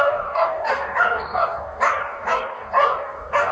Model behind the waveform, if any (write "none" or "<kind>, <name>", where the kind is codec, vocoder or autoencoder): codec, DAC